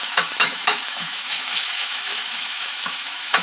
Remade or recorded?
remade